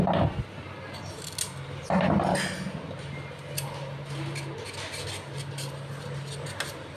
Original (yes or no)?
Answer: yes